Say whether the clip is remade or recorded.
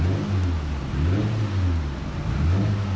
recorded